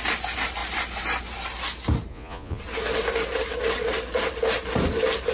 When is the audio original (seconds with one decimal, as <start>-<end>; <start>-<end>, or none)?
0.0-2.1; 2.6-5.3